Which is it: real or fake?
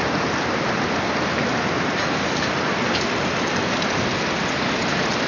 real